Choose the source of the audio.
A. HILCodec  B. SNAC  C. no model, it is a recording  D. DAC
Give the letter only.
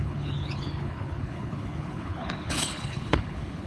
A